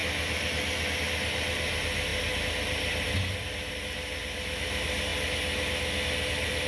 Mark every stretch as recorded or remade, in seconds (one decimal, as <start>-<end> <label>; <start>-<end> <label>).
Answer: 0.0-6.7 recorded